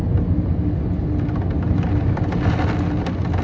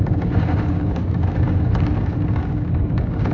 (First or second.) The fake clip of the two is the second